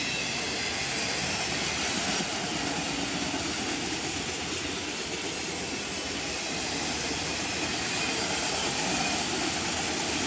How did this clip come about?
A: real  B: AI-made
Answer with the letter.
A